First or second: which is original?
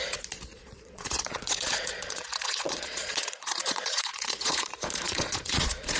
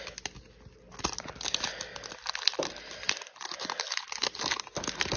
second